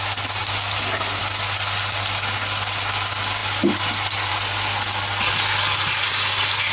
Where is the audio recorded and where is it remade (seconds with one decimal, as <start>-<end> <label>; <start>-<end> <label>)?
0.0-6.7 recorded